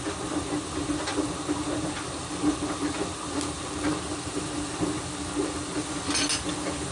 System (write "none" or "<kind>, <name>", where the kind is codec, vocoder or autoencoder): none